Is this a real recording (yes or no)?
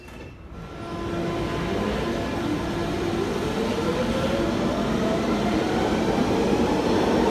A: yes